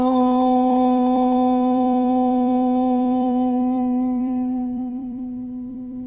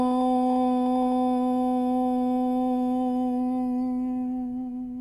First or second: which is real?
second